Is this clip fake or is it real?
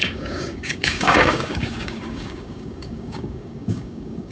fake